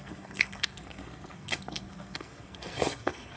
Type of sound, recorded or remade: remade